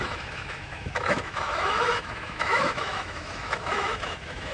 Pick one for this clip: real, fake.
fake